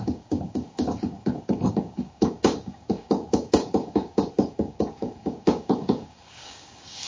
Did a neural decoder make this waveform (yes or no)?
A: yes